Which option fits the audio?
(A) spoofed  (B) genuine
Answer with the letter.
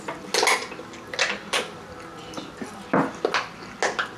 B